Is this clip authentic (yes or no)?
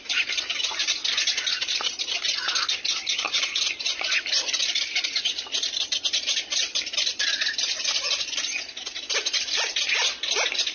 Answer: yes